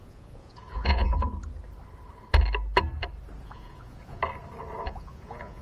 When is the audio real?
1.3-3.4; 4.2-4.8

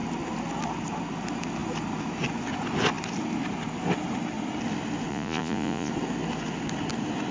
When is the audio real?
0.0-5.1; 5.9-7.3

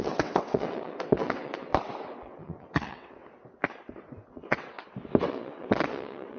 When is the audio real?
1.7-2.2; 3.2-4.3; 4.8-5.3

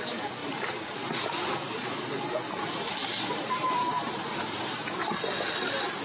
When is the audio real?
0.0-3.0; 5.1-6.0

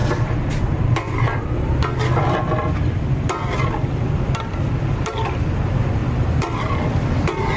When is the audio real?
0.0-0.7; 3.4-4.5; 6.0-6.6

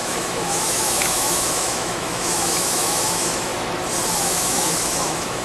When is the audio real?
3.5-4.2